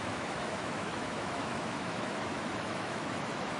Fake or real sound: fake